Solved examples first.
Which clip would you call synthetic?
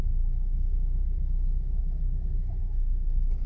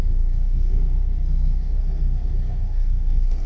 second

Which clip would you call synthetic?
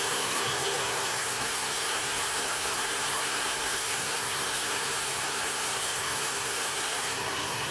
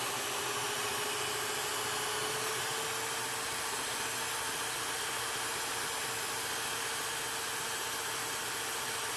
first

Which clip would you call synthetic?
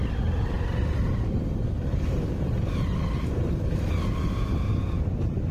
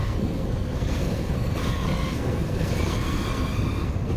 second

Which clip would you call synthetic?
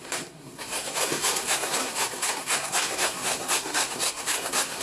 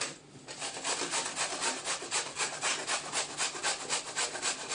first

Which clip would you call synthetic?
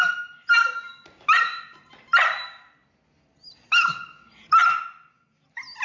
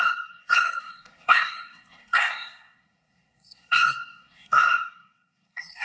second